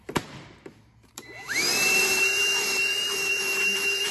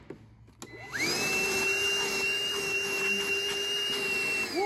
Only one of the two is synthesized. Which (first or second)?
first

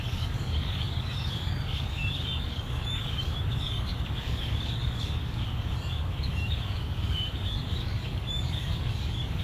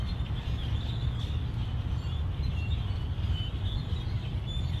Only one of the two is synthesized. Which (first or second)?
first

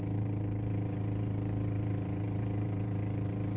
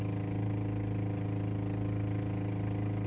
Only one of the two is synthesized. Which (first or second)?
first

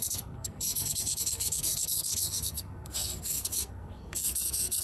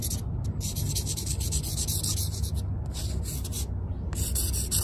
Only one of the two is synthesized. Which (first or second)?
first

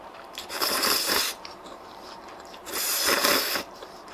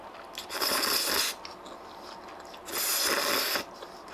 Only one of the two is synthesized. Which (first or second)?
first